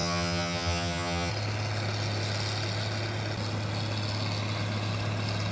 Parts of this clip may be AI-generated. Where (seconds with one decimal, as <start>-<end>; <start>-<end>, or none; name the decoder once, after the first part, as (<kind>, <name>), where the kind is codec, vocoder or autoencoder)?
0.0-1.3 (vocoder, HiFi-GAN)